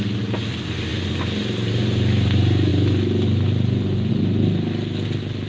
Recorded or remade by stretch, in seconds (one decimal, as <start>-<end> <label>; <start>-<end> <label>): 0.0-5.5 recorded